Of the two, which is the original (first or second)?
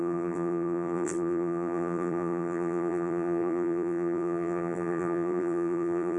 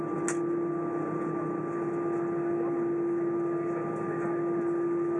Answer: second